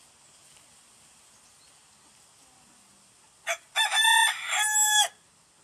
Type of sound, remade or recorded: recorded